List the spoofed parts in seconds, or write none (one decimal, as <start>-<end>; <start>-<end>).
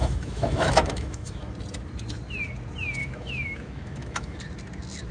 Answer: 0.0-1.5; 3.0-4.4